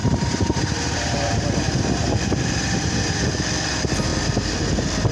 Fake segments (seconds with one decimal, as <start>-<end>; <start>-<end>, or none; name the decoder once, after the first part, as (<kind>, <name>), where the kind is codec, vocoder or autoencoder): 0.0-3.1 (vocoder, BigVGAN v2)